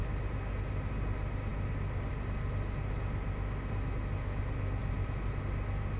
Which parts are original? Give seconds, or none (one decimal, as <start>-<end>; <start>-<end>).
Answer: 0.0-6.0